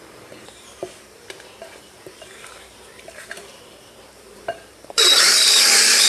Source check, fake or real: fake